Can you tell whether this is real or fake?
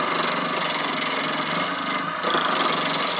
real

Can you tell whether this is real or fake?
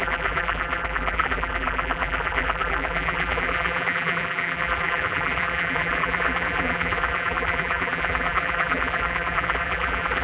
fake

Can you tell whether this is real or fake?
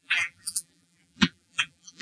fake